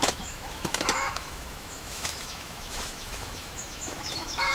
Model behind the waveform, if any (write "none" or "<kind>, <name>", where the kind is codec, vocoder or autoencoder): autoencoder, DAC-VAE